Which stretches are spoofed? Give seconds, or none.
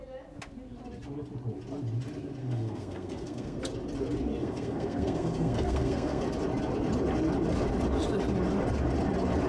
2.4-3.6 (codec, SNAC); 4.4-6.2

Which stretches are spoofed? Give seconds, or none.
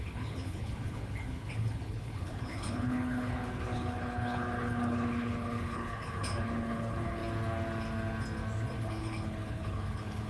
0.0-7.2 (codec, HILCodec); 8.8-10.3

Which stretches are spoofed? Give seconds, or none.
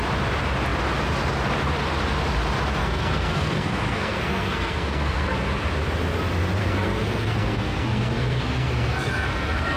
2.8-5.3 (codec, SNAC); 6.6-9.8